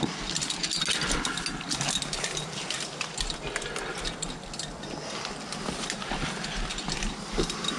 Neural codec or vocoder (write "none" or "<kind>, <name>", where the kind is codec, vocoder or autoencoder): none